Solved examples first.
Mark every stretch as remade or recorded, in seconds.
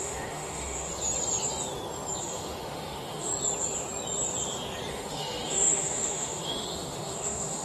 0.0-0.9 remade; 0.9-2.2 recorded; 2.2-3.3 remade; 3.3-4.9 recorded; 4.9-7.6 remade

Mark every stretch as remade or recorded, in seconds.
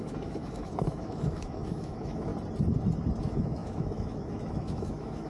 0.0-2.3 remade; 2.3-3.2 recorded; 3.2-5.3 remade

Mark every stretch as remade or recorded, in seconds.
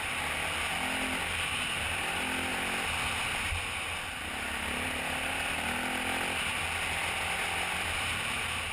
0.0-8.7 recorded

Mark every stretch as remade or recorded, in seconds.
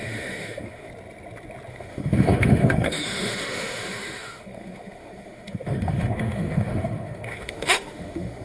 0.0-0.9 remade; 0.9-1.7 recorded; 1.7-8.4 remade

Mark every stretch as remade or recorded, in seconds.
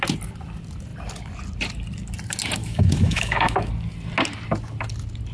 0.0-2.6 recorded; 2.6-3.7 remade; 3.7-5.3 recorded